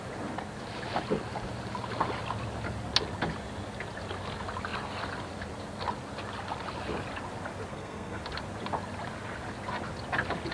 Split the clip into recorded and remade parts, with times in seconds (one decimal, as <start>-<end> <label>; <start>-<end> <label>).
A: 0.0-7.7 recorded; 7.7-8.2 remade; 8.2-10.5 recorded